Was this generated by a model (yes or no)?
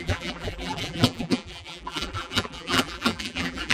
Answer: yes